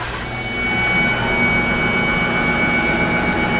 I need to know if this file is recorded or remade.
recorded